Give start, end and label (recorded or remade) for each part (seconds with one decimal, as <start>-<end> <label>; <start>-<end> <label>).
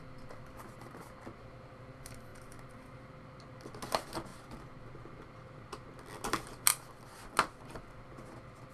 0.0-8.7 recorded